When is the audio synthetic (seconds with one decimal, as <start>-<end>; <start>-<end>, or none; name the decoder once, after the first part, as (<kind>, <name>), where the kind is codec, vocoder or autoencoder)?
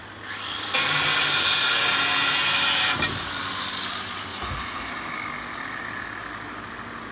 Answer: 4.3-4.9 (vocoder, Vocos)